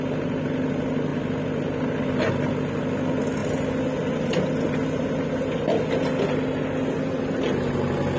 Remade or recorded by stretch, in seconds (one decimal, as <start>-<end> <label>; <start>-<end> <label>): 0.0-8.2 recorded